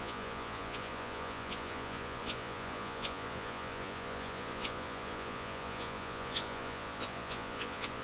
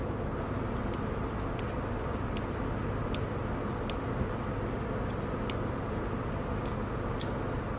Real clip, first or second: second